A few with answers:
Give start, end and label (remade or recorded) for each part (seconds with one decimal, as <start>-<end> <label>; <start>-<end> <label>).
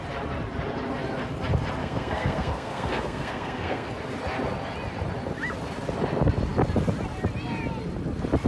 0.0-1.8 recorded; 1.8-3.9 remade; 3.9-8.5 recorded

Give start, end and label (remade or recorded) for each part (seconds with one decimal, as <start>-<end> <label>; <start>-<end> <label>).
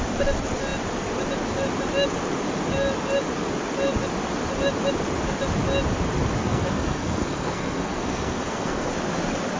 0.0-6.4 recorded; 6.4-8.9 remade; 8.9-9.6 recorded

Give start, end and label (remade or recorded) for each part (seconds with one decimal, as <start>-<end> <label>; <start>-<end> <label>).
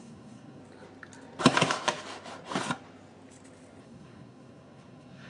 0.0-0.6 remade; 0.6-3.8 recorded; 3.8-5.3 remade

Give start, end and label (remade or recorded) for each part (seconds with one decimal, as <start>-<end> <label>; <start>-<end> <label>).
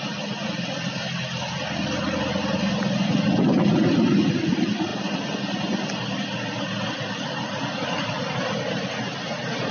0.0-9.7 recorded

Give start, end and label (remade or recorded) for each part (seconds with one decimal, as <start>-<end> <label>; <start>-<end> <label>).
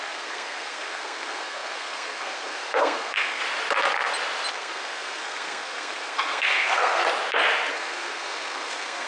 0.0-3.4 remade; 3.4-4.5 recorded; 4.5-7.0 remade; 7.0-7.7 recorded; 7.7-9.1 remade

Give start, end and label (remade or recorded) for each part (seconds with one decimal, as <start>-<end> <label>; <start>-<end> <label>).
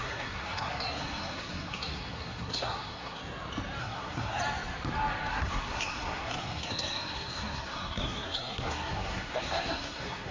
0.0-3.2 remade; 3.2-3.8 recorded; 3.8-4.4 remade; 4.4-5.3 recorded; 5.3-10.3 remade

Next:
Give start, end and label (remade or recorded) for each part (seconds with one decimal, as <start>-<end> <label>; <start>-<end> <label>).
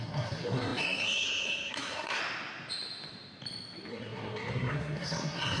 0.0-2.2 remade; 2.2-3.9 recorded; 3.9-5.6 remade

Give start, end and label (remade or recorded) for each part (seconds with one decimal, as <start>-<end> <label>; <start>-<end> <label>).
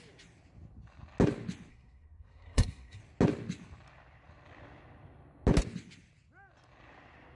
0.0-1.7 recorded; 1.7-3.0 remade; 3.0-7.3 recorded